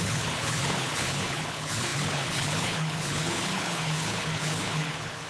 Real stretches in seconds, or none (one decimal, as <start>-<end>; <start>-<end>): none